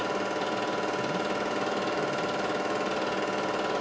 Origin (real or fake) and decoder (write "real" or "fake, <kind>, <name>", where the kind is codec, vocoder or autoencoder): real